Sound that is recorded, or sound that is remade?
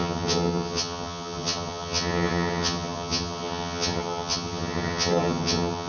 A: remade